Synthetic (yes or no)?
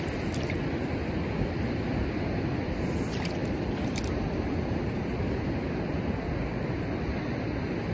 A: no